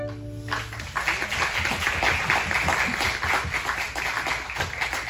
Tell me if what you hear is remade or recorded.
recorded